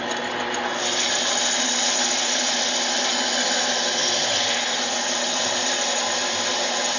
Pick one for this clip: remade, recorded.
recorded